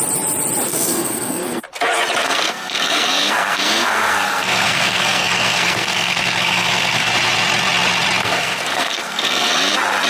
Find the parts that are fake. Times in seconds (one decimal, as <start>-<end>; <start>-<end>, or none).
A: 0.7-1.6; 2.2-7.1; 8.2-9.5